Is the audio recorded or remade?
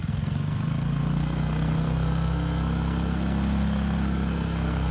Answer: remade